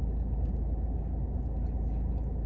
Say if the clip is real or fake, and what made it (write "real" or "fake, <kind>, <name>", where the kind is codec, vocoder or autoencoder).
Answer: real